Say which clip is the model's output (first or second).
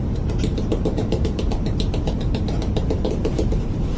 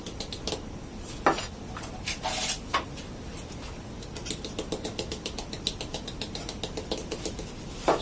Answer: first